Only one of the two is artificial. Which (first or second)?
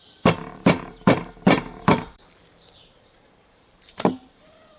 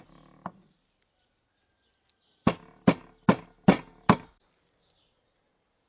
first